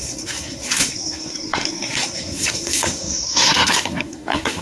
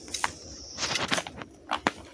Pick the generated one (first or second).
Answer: first